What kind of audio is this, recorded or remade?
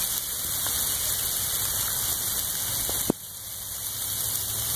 recorded